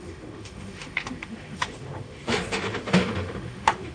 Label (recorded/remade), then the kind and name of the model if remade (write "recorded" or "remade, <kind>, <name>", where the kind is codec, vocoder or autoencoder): remade, autoencoder, DAC-VAE